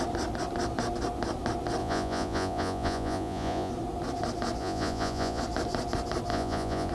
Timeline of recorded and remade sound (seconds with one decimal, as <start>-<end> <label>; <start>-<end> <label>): 0.0-1.8 recorded; 1.8-3.7 remade; 3.7-4.6 recorded; 4.6-5.4 remade; 5.4-6.3 recorded; 6.3-6.9 remade